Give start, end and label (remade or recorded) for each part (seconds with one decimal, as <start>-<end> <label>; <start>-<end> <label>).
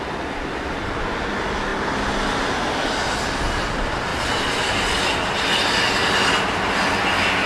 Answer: 0.0-7.5 recorded